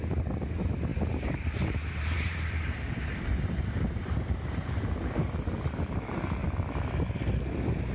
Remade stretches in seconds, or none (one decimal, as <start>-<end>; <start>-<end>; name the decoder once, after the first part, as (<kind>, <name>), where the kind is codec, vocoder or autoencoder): 0.9-4.8 (vocoder, BigVGAN v2)